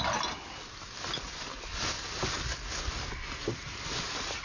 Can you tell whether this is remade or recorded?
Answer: recorded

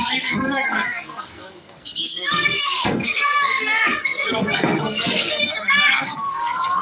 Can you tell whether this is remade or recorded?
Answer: remade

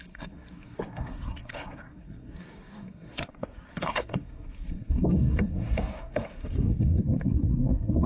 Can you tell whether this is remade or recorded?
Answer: remade